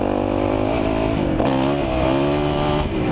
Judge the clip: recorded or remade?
recorded